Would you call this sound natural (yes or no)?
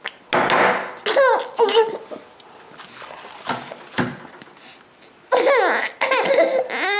yes